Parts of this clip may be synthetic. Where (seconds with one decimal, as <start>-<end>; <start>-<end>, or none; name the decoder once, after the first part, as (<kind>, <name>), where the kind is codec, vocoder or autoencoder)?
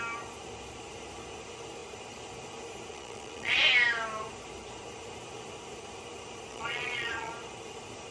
2.9-3.6 (vocoder, Vocos); 6.5-7.3